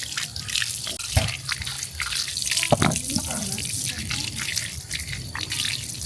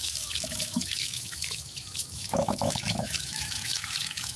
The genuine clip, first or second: first